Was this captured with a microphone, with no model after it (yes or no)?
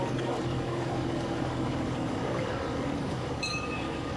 no